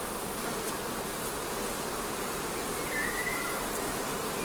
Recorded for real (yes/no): yes